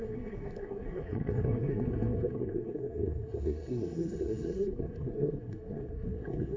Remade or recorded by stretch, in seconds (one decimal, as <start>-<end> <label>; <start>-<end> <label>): 0.0-6.6 remade